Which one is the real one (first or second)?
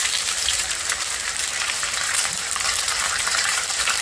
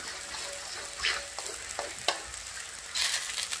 second